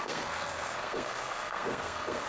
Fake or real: fake